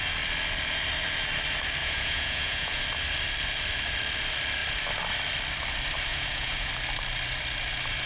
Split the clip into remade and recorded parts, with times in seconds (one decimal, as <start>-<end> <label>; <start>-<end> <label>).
0.0-1.8 recorded; 1.8-2.8 remade; 2.8-6.1 recorded; 6.1-6.7 remade; 6.7-8.1 recorded